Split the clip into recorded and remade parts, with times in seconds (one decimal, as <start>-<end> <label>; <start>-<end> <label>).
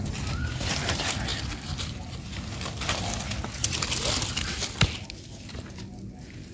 0.0-6.5 recorded